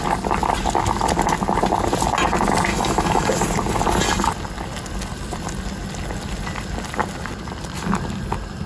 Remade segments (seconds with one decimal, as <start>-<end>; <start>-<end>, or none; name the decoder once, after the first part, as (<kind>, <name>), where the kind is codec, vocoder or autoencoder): 2.7-3.3 (autoencoder, DAC-VAE)